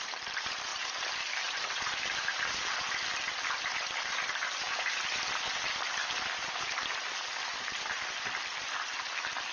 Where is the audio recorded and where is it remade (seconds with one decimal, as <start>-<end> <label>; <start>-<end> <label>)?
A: 0.0-6.0 recorded; 6.0-8.2 remade; 8.2-9.5 recorded